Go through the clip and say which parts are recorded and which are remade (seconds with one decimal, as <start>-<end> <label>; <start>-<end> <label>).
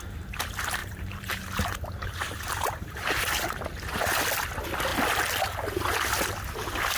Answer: 0.0-0.8 recorded; 0.8-3.3 remade; 3.3-7.0 recorded